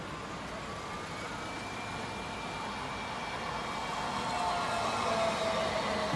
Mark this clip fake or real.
real